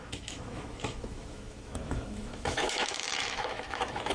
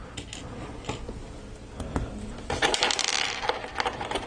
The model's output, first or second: first